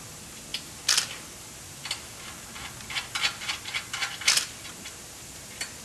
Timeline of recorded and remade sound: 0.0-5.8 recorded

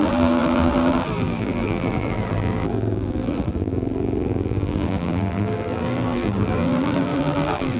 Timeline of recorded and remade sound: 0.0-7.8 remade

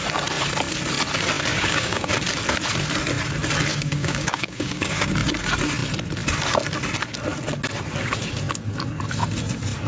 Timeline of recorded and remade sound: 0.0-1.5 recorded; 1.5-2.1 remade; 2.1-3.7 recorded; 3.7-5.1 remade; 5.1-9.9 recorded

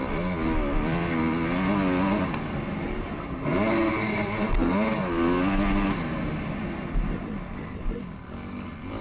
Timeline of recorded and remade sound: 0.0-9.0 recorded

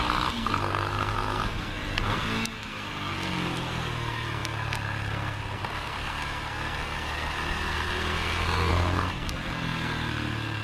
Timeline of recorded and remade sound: 0.0-10.6 remade